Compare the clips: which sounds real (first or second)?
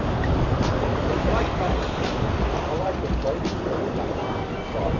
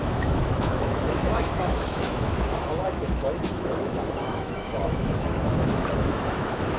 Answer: first